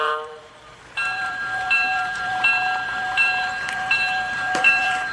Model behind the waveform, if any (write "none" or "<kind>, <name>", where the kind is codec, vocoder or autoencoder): vocoder, BigVGAN v2